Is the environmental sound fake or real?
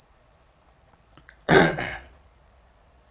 fake